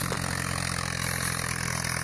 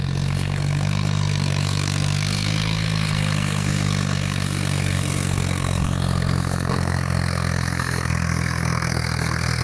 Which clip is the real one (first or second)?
first